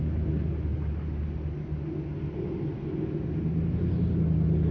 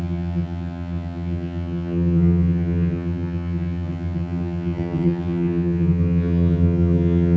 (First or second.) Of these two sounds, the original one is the first